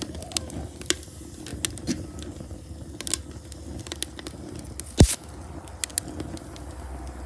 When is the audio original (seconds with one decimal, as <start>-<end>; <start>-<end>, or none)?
0.0-7.3